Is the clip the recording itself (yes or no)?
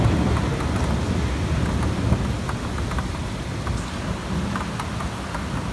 yes